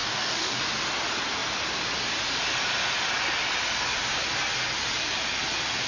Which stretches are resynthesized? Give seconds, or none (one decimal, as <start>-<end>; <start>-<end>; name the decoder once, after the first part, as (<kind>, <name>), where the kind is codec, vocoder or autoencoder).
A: 0.0-0.6 (codec, DAC)